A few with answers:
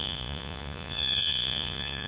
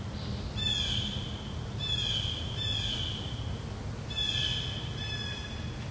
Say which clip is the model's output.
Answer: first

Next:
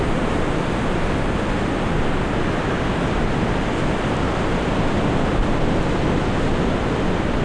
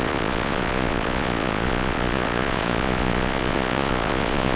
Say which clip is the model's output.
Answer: second